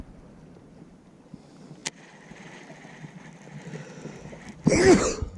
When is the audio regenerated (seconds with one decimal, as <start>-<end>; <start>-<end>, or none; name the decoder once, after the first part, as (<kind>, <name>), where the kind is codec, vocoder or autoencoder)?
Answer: none